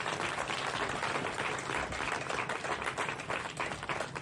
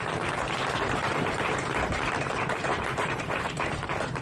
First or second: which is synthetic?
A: second